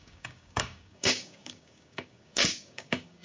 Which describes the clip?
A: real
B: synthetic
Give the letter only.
B